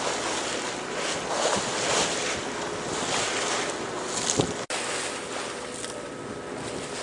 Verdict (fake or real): real